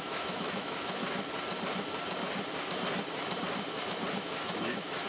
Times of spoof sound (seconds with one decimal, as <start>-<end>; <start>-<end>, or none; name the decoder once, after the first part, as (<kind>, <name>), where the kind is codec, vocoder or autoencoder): 0.0-1.0 (autoencoder, DAC-VAE); 4.1-5.1